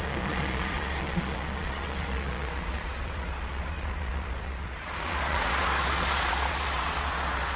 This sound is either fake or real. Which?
fake